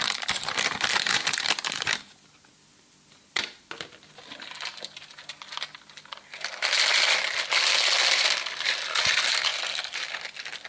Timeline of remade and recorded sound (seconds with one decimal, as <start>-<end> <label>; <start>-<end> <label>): 0.0-10.7 recorded